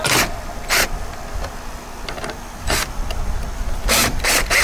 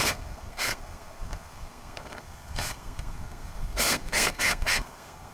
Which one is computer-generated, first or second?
second